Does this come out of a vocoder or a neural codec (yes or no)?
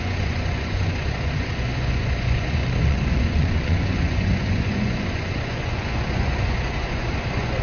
yes